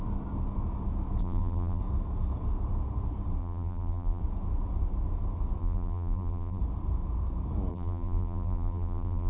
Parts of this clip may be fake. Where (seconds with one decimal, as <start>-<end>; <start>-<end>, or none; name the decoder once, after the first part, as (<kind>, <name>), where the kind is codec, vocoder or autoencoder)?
1.2-1.8 (vocoder, BigVGAN v2); 3.4-4.2; 5.6-6.6; 7.7-9.3